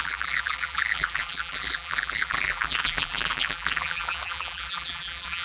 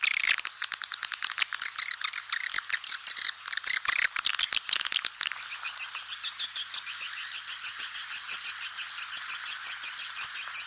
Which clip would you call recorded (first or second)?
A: second